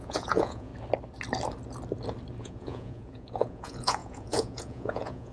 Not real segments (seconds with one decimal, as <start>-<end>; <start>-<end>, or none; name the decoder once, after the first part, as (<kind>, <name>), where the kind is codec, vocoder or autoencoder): 0.0-0.7 (vocoder, Vocos); 2.4-5.3